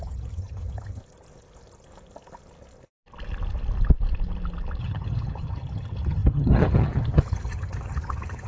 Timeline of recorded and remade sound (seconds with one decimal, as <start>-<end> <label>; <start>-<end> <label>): 0.0-1.0 remade; 1.0-4.8 recorded; 4.8-8.5 remade